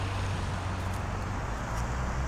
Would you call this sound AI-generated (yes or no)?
no